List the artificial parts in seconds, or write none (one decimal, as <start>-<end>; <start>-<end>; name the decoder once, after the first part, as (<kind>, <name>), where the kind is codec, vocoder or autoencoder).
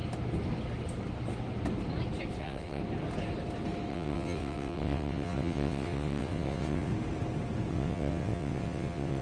2.4-2.8 (vocoder, WaveNeXt); 3.9-6.9; 7.7-9.2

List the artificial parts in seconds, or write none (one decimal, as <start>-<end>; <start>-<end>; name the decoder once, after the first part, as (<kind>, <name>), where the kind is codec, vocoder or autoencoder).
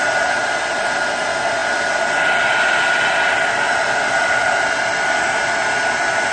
none